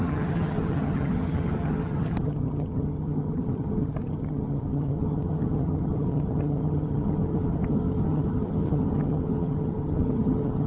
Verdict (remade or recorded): remade